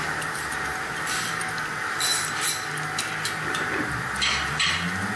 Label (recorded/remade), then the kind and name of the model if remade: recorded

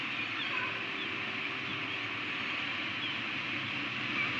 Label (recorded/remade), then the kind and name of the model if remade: recorded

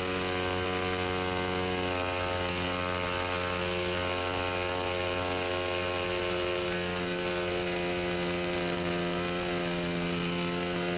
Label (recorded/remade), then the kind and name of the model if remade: recorded